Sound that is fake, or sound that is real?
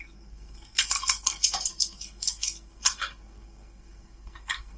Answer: fake